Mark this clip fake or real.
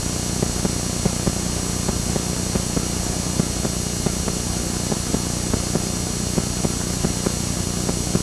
real